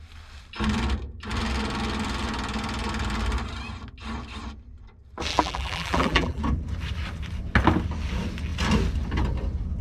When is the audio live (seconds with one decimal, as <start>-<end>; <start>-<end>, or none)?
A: 0.0-5.3; 6.4-9.8